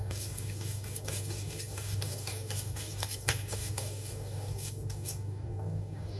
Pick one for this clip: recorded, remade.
remade